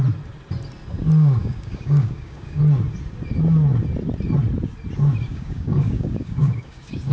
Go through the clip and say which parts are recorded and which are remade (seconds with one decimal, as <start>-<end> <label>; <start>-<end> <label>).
0.0-1.4 recorded; 1.4-2.6 remade; 2.6-5.3 recorded; 5.3-7.1 remade